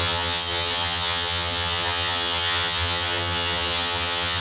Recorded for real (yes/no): no